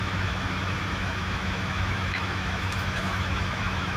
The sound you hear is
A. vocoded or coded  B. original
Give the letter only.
A